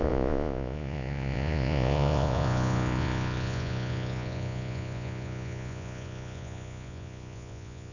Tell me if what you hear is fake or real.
fake